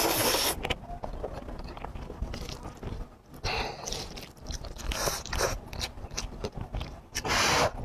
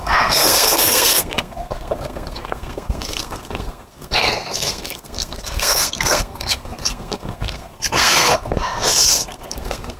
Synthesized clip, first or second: second